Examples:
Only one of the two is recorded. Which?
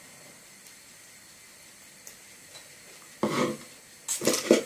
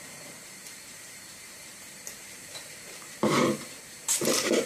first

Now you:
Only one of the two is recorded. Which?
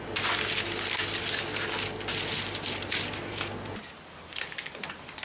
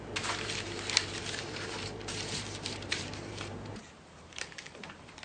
first